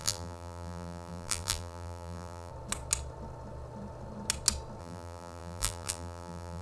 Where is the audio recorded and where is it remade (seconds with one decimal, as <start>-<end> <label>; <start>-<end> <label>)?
0.0-2.5 remade; 2.5-4.8 recorded; 4.8-6.6 remade